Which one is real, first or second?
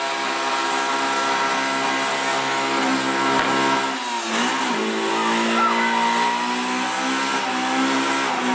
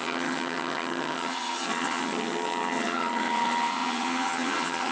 first